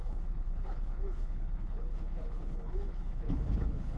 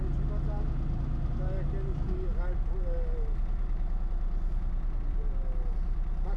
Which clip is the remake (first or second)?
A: first